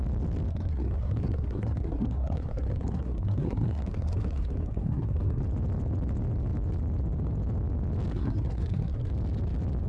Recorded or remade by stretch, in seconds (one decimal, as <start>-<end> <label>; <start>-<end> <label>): 0.0-0.5 recorded; 0.5-5.4 remade; 5.4-8.1 recorded; 8.1-9.1 remade; 9.1-9.9 recorded